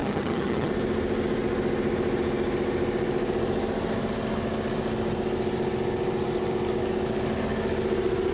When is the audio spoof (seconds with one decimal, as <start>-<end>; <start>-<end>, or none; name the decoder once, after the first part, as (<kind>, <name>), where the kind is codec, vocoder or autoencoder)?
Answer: 0.0-0.7 (vocoder, HiFi-GAN)